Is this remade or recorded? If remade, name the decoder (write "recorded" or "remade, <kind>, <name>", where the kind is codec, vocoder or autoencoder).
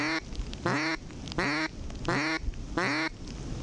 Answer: recorded